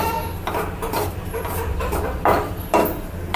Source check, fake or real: real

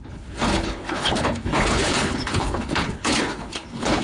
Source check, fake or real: fake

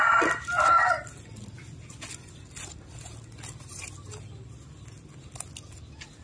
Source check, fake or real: real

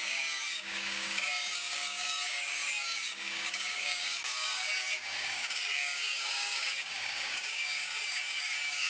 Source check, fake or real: fake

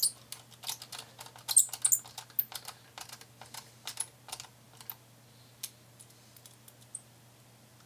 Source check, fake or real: real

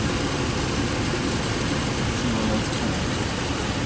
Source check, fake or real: real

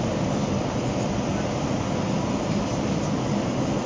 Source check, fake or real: real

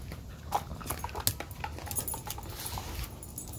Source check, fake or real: real